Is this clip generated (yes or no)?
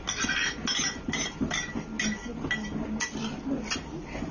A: no